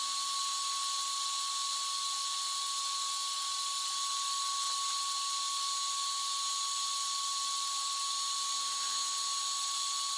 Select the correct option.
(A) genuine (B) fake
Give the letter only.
A